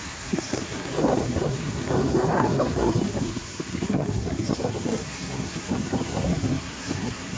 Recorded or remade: remade